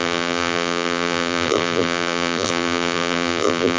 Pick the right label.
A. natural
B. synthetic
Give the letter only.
B